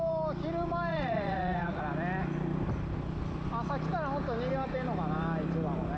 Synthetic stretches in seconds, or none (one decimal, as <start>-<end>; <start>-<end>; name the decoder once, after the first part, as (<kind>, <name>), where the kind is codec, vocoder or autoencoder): 0.9-1.8 (vocoder, Vocos)